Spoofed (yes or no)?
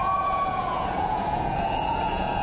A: yes